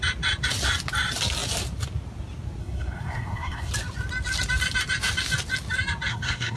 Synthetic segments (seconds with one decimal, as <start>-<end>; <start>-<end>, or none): 2.6-3.7; 6.1-6.6